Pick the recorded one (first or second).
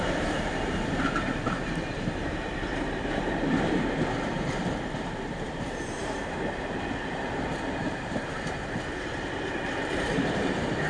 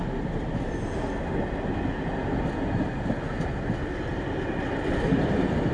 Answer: second